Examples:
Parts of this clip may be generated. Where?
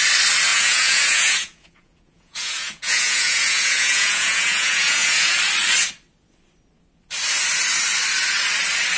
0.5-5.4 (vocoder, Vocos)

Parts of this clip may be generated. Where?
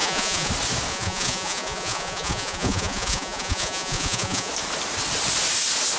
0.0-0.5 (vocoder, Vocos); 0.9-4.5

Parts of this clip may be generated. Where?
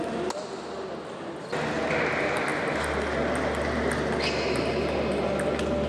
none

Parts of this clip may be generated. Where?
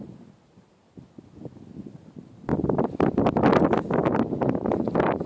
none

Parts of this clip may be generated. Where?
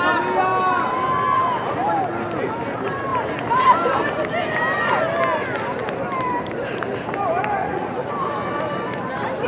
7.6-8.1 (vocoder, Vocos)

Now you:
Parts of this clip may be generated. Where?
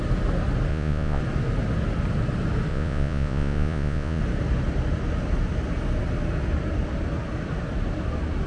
0.7-1.2 (vocoder, Vocos); 2.7-4.2